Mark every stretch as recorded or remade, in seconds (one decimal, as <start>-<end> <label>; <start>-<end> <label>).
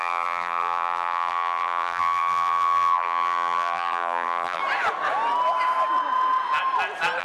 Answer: 0.0-4.6 remade; 4.6-7.2 recorded